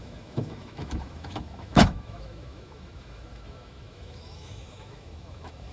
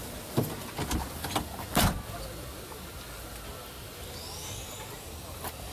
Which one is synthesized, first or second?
first